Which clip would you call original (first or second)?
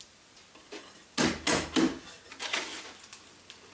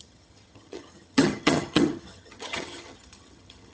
first